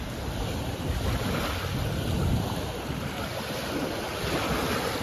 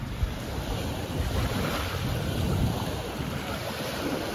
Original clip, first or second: first